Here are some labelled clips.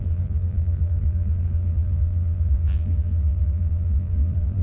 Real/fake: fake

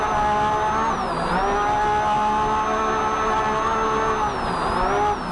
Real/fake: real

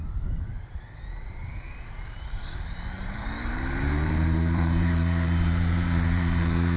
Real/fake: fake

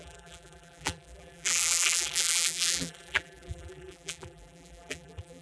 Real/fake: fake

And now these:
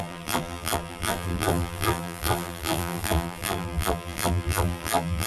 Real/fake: fake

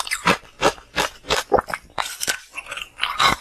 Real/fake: real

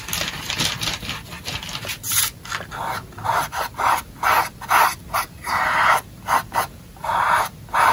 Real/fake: real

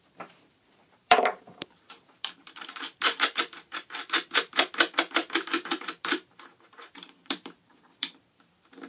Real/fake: fake